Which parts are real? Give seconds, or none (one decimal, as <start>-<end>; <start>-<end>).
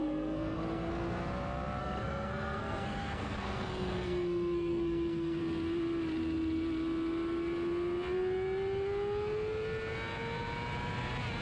0.9-1.8; 5.4-11.4